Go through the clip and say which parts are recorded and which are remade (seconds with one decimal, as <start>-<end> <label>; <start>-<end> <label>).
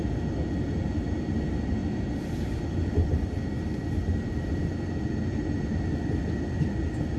0.0-7.2 recorded